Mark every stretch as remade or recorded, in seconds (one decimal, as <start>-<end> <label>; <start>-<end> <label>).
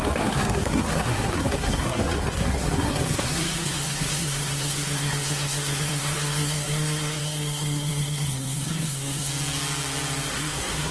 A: 0.0-9.3 remade; 9.3-10.3 recorded; 10.3-10.9 remade